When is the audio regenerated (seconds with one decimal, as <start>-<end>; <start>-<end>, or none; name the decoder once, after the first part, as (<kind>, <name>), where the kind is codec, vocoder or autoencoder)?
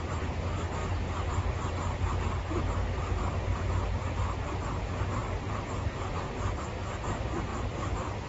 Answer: 5.2-6.2 (vocoder, BigVGAN v2)